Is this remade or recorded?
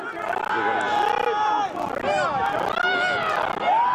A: recorded